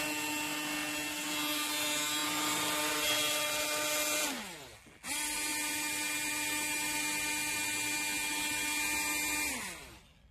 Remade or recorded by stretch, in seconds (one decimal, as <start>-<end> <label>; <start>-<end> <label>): 0.0-10.3 recorded

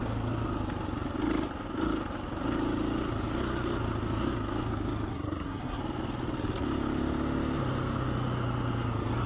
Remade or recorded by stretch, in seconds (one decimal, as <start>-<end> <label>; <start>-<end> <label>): 0.0-5.1 recorded; 5.1-5.8 remade; 5.8-9.3 recorded

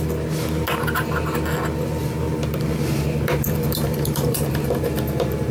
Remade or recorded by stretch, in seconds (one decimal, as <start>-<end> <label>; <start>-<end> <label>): 0.0-2.0 recorded; 2.0-5.5 remade

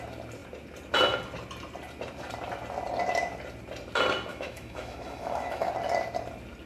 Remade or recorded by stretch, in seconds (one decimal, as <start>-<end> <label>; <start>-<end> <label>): 0.0-4.3 recorded; 4.3-5.7 remade; 5.7-6.7 recorded

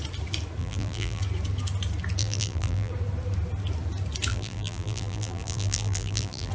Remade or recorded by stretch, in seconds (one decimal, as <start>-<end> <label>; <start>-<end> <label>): 0.0-0.6 recorded; 0.6-1.2 remade; 1.2-2.2 recorded; 2.2-2.9 remade; 2.9-4.3 recorded; 4.3-6.5 remade

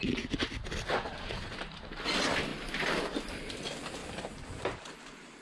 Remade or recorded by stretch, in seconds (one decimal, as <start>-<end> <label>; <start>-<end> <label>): 0.0-0.9 recorded; 0.9-1.7 remade; 1.7-4.0 recorded; 4.0-5.4 remade

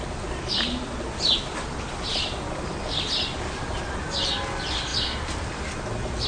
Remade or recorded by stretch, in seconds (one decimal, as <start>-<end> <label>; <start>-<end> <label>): 0.0-6.3 recorded

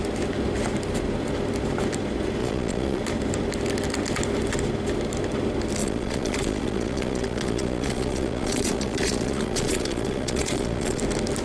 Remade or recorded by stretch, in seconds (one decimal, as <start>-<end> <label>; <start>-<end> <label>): 0.0-2.4 recorded; 2.4-3.0 remade; 3.0-5.8 recorded; 5.8-11.0 remade; 11.0-11.4 recorded